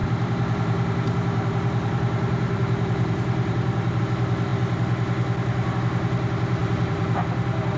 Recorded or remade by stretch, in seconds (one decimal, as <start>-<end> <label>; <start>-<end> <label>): 0.0-4.0 remade; 4.0-6.6 recorded; 6.6-7.2 remade; 7.2-7.8 recorded